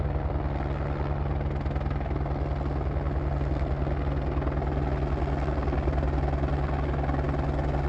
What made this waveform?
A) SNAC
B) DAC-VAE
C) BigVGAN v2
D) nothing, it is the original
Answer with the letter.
D